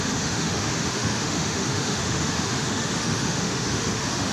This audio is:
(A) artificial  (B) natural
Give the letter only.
A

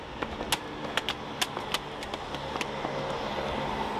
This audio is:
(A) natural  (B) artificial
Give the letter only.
A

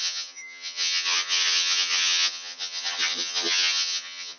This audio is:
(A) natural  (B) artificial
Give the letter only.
B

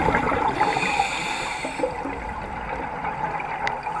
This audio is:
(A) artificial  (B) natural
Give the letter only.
B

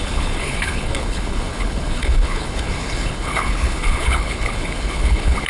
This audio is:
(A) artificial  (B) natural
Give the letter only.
A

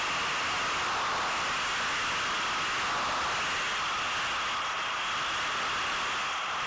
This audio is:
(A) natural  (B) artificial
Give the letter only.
A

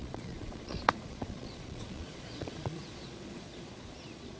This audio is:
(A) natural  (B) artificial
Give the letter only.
B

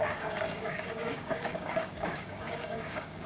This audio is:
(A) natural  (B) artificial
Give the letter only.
B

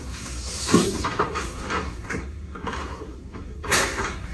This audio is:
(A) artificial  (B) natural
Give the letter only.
A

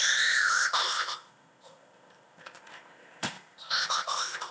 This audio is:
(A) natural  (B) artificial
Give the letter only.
B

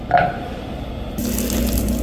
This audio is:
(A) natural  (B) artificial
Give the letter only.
A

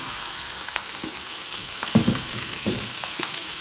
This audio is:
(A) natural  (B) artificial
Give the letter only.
B